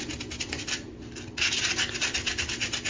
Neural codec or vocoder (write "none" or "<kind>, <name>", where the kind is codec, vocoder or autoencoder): none